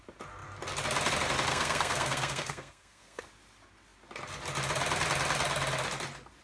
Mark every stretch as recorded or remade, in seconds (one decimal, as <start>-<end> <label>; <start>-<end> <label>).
0.0-1.5 recorded; 1.5-3.2 remade; 3.2-6.4 recorded